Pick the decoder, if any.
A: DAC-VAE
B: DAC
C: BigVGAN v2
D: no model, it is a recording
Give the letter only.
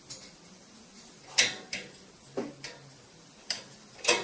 C